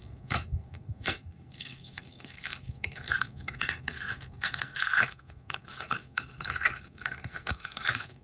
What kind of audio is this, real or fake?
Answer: fake